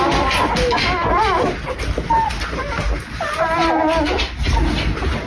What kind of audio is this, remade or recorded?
recorded